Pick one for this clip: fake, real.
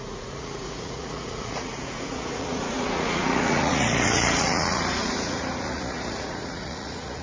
fake